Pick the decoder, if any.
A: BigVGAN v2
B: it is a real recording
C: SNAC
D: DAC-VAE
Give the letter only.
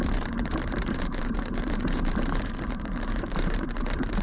A